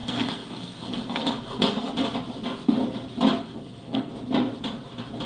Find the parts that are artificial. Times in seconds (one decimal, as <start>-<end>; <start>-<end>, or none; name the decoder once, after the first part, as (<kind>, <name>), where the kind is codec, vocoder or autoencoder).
0.0-1.9 (codec, SNAC); 3.4-4.1

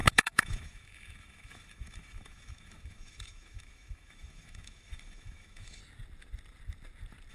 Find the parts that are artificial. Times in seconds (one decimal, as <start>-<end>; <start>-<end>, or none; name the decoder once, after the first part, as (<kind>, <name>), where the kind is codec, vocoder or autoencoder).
0.0-5.8 (autoencoder, DAC-VAE)